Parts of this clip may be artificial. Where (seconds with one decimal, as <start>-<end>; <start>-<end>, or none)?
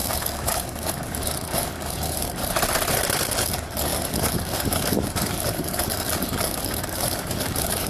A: 0.0-2.4; 3.1-7.9